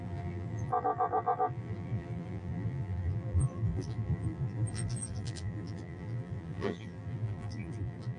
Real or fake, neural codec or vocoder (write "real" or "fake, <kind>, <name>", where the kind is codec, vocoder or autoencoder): fake, vocoder, BigVGAN v2